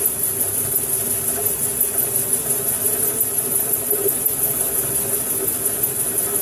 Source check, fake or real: real